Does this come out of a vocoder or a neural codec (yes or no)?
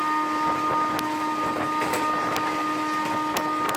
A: no